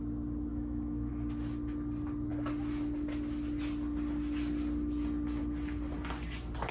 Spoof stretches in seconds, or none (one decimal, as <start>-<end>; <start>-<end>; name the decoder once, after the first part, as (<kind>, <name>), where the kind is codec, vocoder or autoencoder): 0.5-1.1 (autoencoder, DAC-VAE)